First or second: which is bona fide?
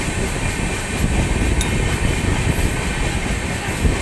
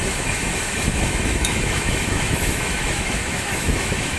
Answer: first